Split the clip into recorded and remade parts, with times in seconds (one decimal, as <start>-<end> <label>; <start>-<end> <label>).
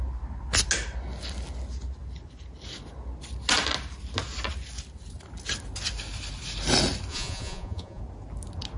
0.0-7.1 recorded; 7.1-8.0 remade; 8.0-8.8 recorded